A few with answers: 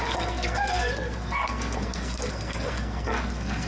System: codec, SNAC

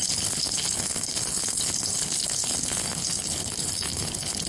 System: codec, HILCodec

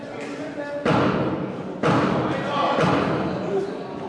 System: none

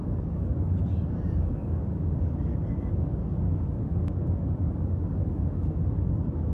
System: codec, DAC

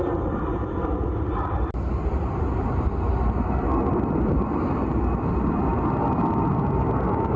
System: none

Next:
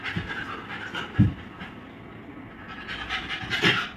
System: none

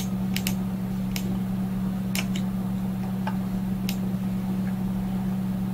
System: none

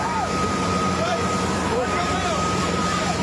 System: vocoder, BigVGAN v2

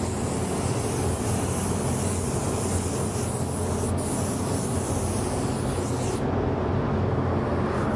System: none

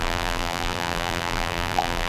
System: vocoder, BigVGAN v2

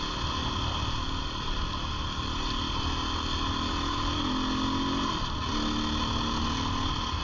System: none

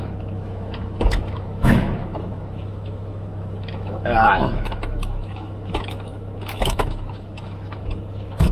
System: autoencoder, DAC-VAE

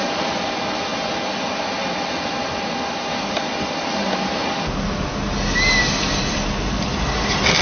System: none